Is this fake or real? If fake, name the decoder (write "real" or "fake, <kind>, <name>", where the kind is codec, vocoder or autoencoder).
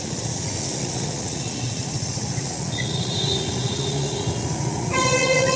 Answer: fake, vocoder, Vocos